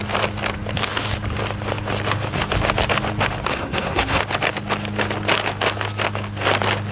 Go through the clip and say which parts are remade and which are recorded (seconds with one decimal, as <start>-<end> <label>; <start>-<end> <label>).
0.0-3.5 recorded; 3.5-4.2 remade; 4.2-6.9 recorded